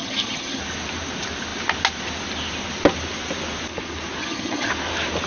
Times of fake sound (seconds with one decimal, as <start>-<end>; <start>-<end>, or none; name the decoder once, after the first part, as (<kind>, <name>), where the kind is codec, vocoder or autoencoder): 0.0-0.6 (vocoder, HiFi-GAN); 4.2-4.7